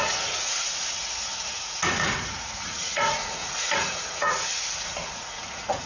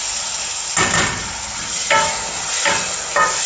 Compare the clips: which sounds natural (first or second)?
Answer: second